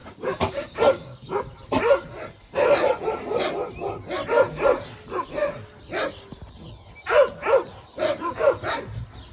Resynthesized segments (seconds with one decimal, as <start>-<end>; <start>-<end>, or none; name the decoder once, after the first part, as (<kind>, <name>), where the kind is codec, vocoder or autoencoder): 0.0-1.4 (codec, DAC)